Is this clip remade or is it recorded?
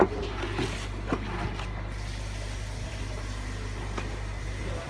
recorded